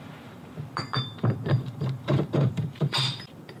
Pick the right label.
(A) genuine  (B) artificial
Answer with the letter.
B